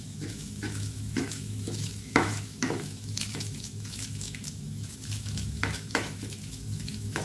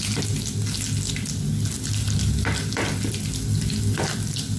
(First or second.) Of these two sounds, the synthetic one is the first